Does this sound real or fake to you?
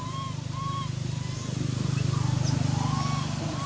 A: real